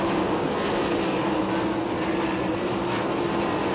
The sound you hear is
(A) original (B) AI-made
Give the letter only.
A